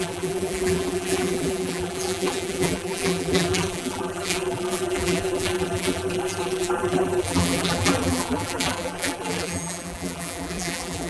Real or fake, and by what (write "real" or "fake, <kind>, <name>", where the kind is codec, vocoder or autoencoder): fake, vocoder, BigVGAN v2